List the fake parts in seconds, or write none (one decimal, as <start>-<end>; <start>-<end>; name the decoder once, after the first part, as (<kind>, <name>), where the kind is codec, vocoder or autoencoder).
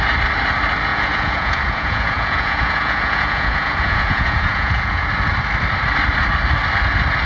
0.9-5.1 (vocoder, Vocos)